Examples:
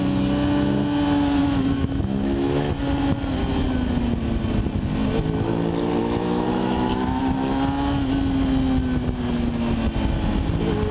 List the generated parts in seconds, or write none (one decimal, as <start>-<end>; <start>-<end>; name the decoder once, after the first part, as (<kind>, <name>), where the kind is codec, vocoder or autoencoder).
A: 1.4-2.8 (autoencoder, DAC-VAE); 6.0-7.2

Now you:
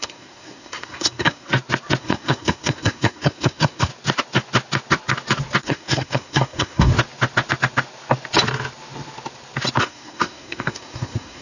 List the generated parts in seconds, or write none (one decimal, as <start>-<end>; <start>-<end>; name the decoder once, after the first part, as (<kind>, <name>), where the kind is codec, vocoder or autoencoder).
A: 0.0-1.5 (codec, SNAC); 2.0-3.9; 5.6-6.9; 9.8-11.4

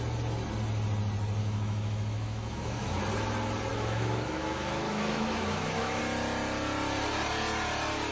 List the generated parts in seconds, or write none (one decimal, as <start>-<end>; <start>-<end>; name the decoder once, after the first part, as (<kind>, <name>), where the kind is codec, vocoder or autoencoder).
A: 1.4-3.0 (autoencoder, DAC-VAE); 3.7-6.0

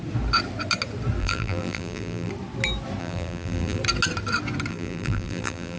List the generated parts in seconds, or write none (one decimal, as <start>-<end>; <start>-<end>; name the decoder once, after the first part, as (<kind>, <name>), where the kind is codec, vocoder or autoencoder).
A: 1.2-2.3 (vocoder, BigVGAN v2); 3.0-3.8; 4.7-5.8